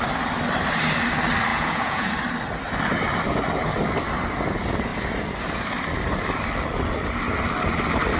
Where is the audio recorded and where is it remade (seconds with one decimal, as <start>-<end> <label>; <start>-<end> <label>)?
0.0-1.5 recorded; 1.5-2.1 remade; 2.1-8.2 recorded